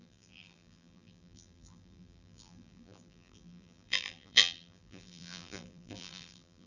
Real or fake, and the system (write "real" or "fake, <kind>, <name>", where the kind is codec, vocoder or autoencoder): fake, vocoder, BigVGAN v2